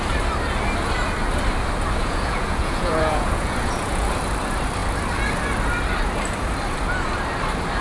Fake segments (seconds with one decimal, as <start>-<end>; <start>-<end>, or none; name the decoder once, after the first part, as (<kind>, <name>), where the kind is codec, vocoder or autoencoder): 2.0-4.2 (vocoder, Vocos)